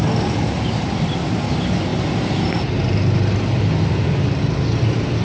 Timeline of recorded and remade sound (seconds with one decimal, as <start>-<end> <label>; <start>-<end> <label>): 0.0-5.2 recorded